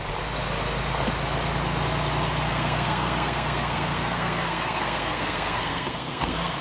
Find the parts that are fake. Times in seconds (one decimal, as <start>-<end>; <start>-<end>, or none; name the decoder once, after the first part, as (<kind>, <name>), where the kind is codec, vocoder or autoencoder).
2.5-6.6 (codec, SNAC)